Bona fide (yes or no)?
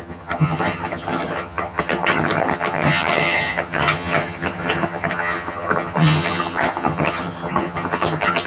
no